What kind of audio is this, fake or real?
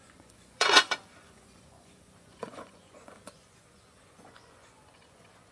fake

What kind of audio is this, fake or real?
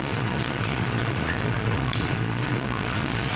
fake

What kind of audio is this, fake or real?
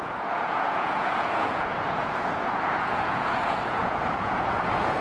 fake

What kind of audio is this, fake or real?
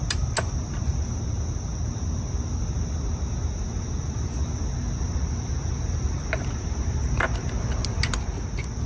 real